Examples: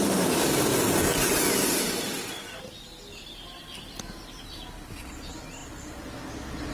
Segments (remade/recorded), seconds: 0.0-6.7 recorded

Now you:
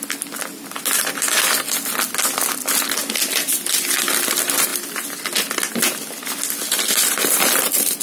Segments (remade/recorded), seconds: 0.0-8.0 recorded

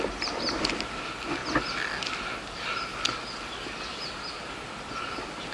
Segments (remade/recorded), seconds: 0.0-5.5 recorded

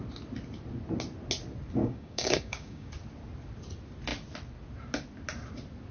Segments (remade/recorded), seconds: 0.0-1.8 recorded; 1.8-2.9 remade; 2.9-5.9 recorded